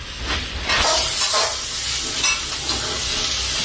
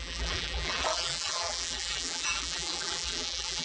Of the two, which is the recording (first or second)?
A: first